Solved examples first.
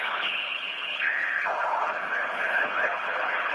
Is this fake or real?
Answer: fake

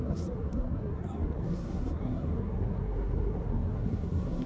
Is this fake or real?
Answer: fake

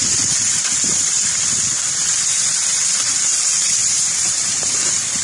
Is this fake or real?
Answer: fake